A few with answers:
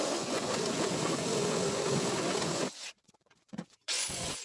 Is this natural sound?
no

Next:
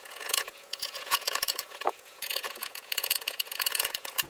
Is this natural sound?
no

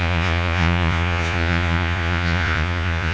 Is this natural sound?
no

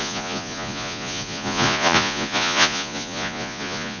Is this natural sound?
no